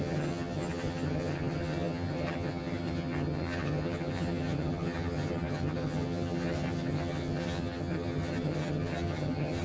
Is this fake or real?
fake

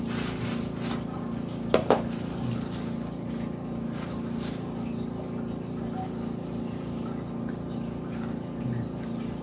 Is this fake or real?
real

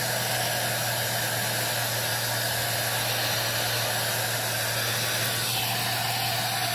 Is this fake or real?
real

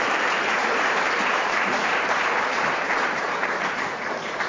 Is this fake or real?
fake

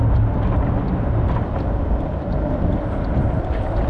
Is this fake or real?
real